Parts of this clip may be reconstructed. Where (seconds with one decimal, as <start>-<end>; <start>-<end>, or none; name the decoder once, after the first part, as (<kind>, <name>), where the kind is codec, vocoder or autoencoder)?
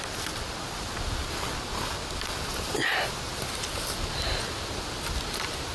none